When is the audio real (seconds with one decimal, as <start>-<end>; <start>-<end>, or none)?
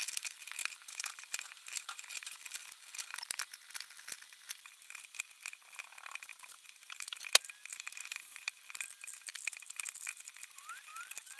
0.0-11.4